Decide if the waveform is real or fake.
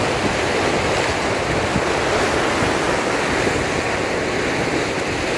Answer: real